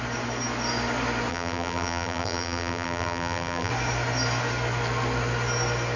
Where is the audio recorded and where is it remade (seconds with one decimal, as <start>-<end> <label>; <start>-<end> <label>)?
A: 0.0-1.3 recorded; 1.3-3.7 remade; 3.7-6.0 recorded